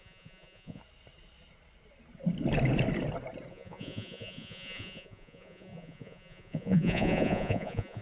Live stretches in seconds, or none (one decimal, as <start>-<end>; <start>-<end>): 0.8-3.5